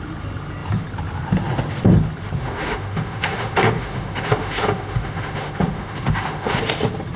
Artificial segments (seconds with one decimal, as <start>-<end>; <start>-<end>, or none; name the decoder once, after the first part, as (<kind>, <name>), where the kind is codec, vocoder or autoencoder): 2.4-6.6 (autoencoder, DAC-VAE)